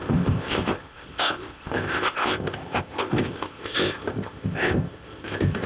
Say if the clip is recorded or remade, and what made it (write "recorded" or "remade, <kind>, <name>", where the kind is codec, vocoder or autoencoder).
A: remade, codec, ZipCodec